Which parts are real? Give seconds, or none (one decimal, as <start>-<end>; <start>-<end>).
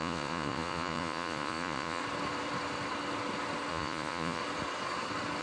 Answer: 2.0-3.7; 4.4-5.4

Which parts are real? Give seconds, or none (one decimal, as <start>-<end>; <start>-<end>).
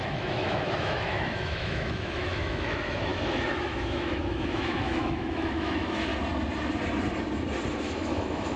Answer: 6.1-7.8